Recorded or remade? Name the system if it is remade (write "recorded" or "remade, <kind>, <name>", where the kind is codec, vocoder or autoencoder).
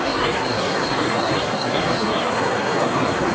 remade, codec, SNAC